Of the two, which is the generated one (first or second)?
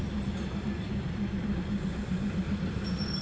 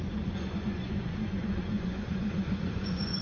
second